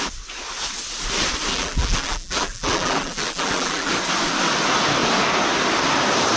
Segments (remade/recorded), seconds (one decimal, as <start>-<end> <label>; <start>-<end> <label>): 0.0-1.5 recorded; 1.5-3.9 remade; 3.9-6.4 recorded